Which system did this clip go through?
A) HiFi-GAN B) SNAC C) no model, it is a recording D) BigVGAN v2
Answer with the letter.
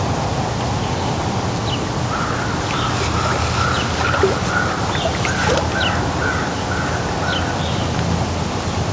C